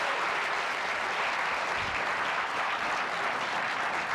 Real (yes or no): yes